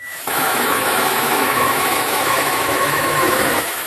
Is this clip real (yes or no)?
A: no